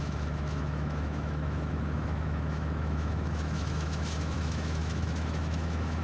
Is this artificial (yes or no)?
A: yes